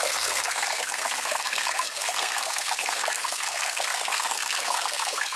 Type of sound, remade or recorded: remade